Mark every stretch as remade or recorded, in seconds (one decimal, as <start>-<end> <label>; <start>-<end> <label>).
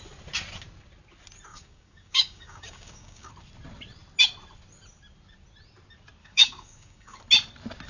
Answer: 0.0-1.5 recorded; 1.5-3.3 remade; 3.3-6.2 recorded; 6.2-7.2 remade; 7.2-7.9 recorded